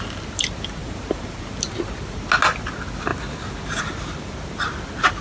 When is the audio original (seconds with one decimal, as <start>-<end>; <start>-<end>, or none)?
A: 0.0-0.8; 1.4-5.2